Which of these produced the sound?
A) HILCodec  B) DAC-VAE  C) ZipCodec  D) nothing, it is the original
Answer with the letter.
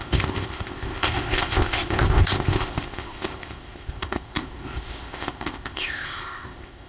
C